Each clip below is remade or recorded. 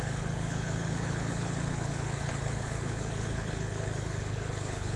remade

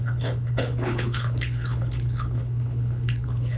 remade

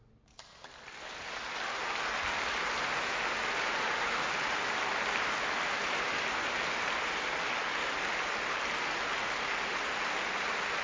recorded